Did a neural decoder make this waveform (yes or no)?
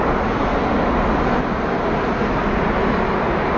no